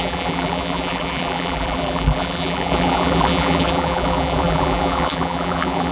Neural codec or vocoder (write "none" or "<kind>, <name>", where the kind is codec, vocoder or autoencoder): vocoder, BigVGAN v2